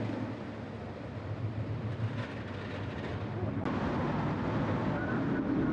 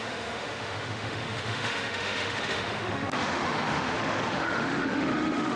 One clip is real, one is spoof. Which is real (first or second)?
first